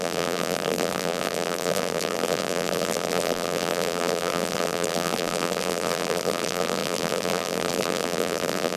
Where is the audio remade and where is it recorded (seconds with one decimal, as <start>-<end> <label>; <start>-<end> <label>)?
0.0-8.8 remade